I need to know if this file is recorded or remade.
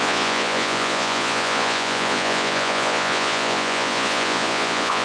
remade